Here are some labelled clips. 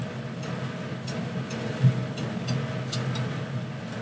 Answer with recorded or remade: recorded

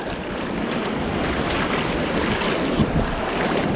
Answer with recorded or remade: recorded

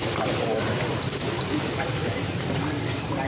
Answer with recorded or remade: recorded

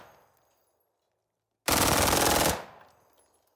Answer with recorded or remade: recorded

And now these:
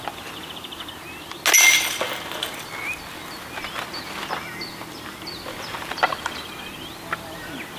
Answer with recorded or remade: recorded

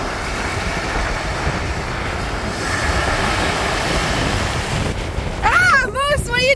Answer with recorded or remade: recorded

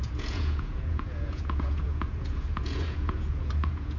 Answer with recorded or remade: remade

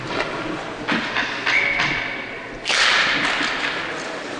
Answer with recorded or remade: recorded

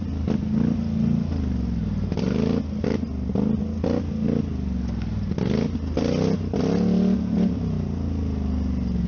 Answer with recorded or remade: recorded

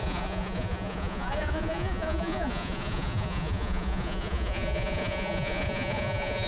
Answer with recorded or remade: remade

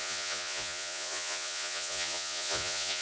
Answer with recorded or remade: remade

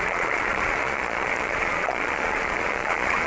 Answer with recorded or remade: remade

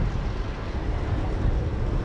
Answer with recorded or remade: recorded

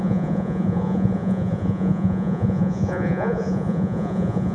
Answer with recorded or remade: remade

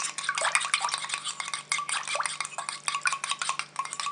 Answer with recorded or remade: recorded